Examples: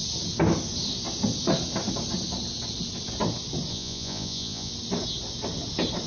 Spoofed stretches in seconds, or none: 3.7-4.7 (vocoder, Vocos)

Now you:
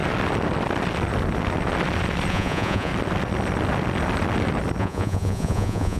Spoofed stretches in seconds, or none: 2.3-2.9 (vocoder, Vocos); 4.8-6.0

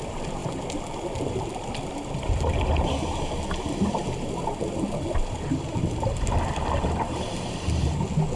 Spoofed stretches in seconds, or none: 0.4-1.7 (vocoder, BigVGAN v2); 3.1-4.4

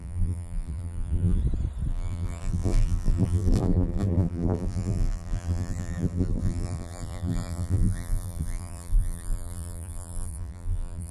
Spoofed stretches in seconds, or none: 0.0-1.4 (vocoder, BigVGAN v2); 1.9-11.1

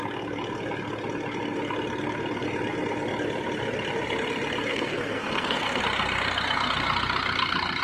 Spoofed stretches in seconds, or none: 4.7-5.8 (codec, SNAC)